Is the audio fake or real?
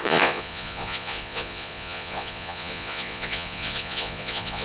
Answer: fake